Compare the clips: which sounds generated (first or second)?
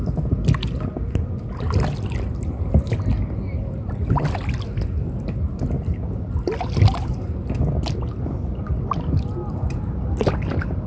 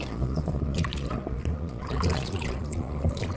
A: second